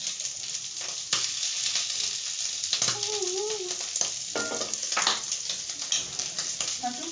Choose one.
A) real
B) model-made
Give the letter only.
A